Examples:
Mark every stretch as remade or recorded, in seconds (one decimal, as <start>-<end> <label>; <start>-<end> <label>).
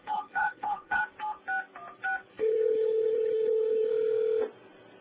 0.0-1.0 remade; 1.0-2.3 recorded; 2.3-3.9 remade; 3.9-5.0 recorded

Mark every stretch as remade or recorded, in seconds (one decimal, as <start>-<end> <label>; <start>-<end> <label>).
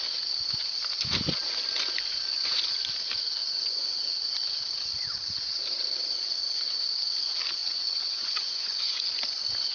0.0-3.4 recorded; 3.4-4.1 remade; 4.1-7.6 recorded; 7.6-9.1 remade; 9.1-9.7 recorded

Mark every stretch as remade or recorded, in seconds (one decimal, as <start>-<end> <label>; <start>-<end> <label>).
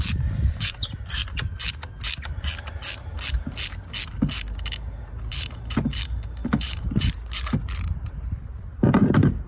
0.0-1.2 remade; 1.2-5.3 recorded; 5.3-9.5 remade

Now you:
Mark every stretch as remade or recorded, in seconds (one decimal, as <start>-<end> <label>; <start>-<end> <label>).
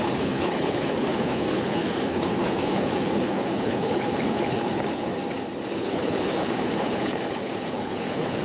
0.0-5.1 remade; 5.1-5.7 recorded; 5.7-8.4 remade